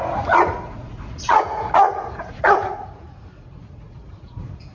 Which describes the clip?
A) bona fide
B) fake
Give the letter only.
B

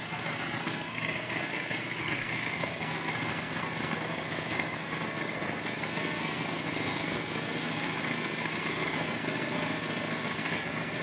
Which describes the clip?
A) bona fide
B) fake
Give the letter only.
B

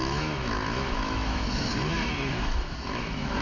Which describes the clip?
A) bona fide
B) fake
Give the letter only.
B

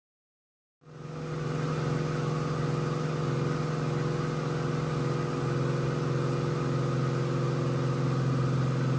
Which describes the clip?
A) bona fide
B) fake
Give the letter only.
A